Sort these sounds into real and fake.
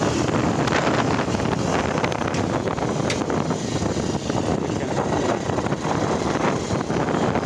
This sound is real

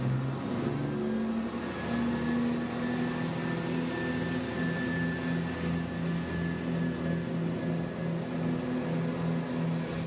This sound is real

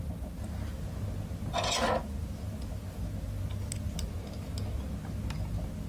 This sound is real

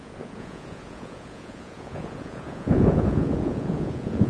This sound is fake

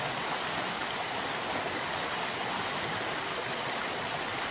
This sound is real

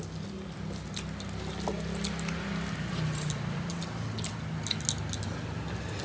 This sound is real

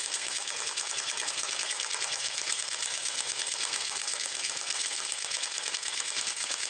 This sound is fake